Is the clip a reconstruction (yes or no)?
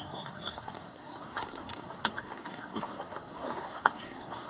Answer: yes